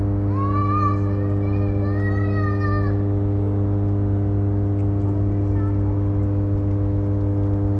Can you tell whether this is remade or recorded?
recorded